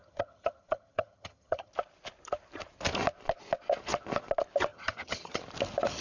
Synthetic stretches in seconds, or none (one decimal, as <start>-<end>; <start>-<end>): 0.0-1.7; 4.7-5.4